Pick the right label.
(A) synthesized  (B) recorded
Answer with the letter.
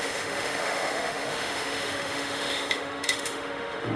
A